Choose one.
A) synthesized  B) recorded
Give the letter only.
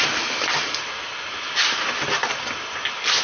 A